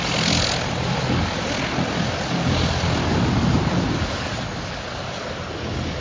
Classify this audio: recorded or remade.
recorded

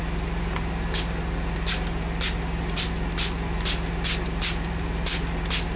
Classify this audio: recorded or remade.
recorded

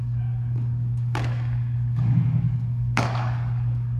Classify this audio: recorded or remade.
remade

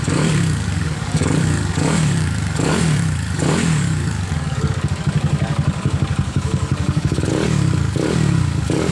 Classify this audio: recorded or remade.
remade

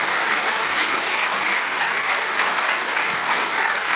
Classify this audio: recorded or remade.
remade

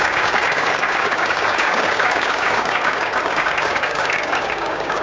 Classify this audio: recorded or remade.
remade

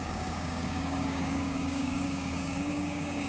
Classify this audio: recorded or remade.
remade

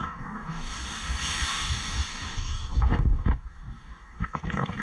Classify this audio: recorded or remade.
remade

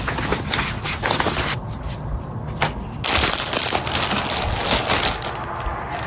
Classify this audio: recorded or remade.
recorded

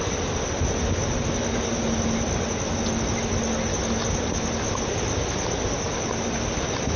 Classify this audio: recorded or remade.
recorded